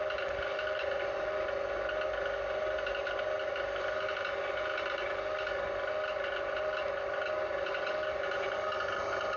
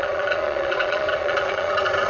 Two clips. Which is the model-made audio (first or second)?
second